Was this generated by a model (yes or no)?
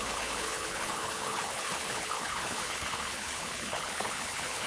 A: yes